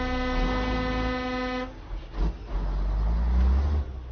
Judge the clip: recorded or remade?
recorded